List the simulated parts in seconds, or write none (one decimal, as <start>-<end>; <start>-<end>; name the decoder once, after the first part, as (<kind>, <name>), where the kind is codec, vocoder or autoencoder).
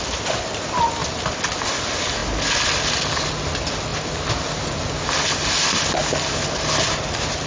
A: none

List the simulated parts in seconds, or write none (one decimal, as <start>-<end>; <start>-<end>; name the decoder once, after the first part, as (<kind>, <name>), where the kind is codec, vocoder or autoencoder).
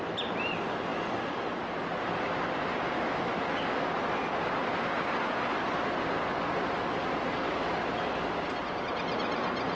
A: none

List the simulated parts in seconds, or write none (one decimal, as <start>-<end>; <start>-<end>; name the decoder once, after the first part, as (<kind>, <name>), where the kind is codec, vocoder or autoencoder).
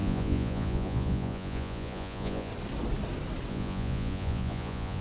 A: 0.0-2.5 (vocoder, Vocos); 3.5-5.0